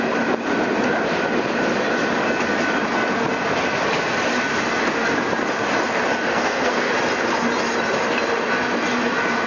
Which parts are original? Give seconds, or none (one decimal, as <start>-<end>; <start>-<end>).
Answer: 0.0-6.3; 6.9-9.5